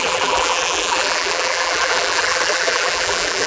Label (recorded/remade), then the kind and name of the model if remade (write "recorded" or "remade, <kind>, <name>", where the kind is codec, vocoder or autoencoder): remade, vocoder, BigVGAN v2